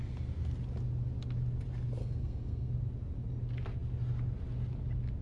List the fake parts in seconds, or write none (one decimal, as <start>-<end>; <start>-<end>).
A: 2.0-2.7